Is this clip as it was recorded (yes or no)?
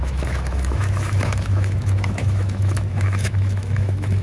no